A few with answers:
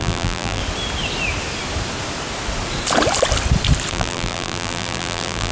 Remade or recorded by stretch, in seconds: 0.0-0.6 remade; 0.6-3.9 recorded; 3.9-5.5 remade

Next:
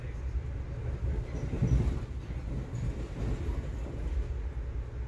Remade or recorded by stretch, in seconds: 0.0-5.1 recorded

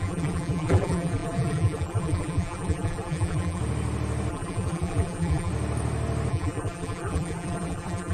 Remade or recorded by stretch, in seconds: 0.0-3.6 remade; 3.6-4.3 recorded; 4.3-5.5 remade; 5.5-6.3 recorded; 6.3-8.1 remade

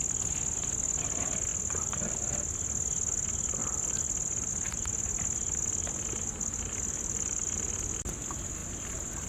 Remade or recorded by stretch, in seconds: 0.0-1.5 recorded; 1.5-2.1 remade; 2.1-3.6 recorded; 3.6-4.5 remade; 4.5-9.3 recorded

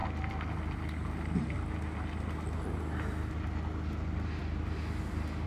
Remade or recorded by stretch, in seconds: 0.0-5.5 recorded